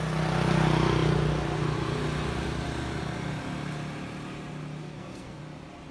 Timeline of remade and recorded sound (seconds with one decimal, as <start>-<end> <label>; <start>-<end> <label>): 0.0-4.8 recorded; 4.8-5.4 remade; 5.4-5.9 recorded